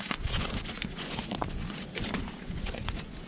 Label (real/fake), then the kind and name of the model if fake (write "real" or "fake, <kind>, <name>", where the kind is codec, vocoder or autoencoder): fake, vocoder, Vocos